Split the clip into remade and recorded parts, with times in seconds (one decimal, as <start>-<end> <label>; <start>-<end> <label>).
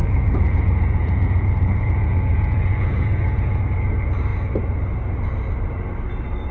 0.0-3.6 remade; 3.6-6.5 recorded